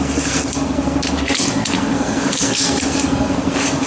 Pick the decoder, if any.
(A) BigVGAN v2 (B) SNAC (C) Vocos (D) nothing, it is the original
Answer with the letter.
B